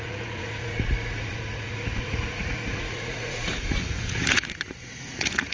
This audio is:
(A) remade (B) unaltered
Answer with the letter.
A